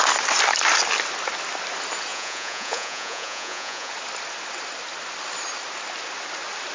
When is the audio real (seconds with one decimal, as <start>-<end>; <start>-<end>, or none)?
0.0-2.1; 3.9-6.7